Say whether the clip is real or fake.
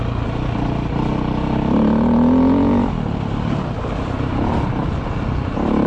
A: real